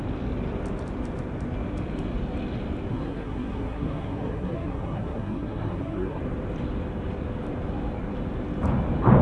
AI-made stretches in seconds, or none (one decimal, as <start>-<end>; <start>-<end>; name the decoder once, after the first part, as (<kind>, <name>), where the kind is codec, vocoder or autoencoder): 2.9-6.2 (codec, SNAC)